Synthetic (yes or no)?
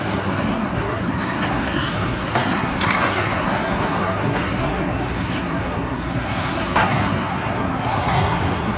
yes